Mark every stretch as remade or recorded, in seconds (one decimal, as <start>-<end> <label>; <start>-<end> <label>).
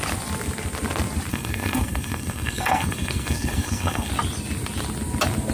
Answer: 0.0-1.3 recorded; 1.3-4.1 remade; 4.1-5.5 recorded